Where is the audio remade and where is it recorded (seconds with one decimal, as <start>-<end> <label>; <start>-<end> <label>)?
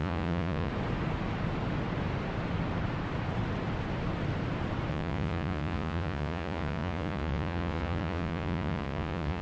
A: 0.0-0.7 remade; 0.7-4.9 recorded; 4.9-9.4 remade